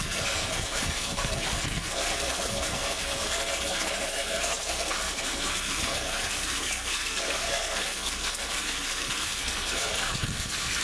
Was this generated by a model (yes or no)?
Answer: yes